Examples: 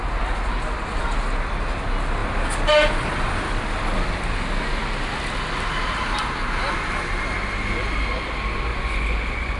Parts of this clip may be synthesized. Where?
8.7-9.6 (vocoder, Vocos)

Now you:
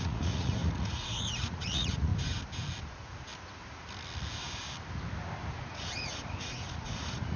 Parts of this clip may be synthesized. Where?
0.0-2.1 (vocoder, Vocos); 2.8-3.3; 5.5-7.4

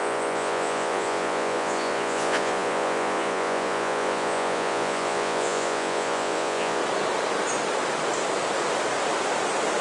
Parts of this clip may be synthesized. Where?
0.0-6.8 (vocoder, Vocos)